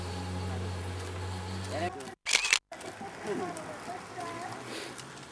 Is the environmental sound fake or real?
real